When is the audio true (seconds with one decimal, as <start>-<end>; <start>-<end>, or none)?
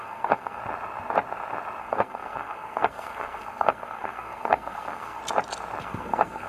0.6-1.8; 5.2-5.8